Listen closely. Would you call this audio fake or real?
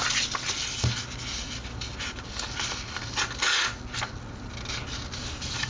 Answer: real